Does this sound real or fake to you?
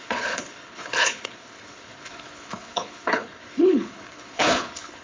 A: fake